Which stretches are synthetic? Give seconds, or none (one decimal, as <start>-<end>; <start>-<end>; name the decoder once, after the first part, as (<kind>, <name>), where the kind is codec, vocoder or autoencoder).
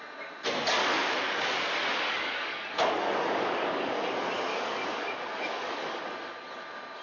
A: 0.8-1.5 (codec, DAC); 1.9-4.1; 4.5-6.0